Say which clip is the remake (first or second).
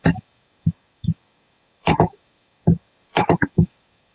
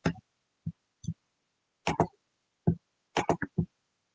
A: first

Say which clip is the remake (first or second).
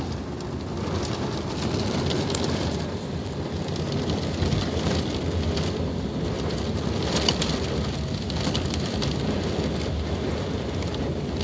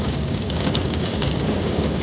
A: second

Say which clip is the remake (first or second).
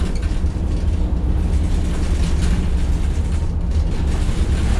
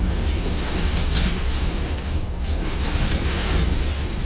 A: second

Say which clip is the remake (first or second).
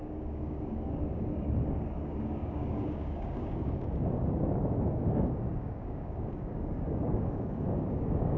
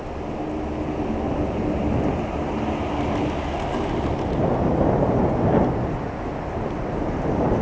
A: first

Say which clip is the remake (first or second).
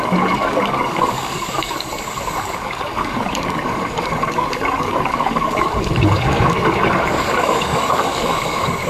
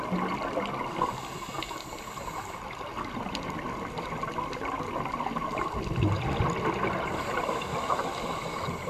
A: first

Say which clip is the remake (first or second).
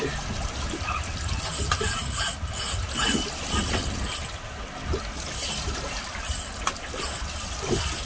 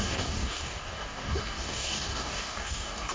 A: second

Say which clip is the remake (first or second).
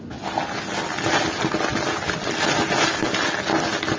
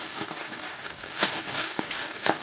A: second